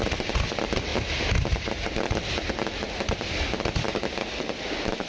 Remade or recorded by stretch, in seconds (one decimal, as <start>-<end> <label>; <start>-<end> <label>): 0.0-5.1 recorded